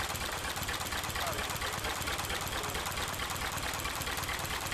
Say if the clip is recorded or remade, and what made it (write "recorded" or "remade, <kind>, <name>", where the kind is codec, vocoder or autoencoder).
remade, vocoder, BigVGAN v2